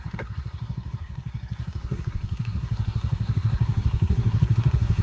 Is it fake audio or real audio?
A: fake